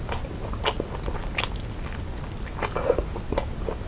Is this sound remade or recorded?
recorded